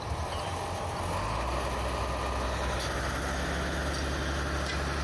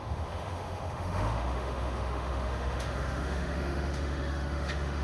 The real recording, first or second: first